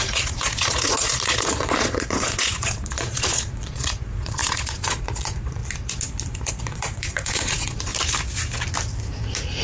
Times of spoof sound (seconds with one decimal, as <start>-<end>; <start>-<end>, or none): 0.0-5.6; 6.5-7.9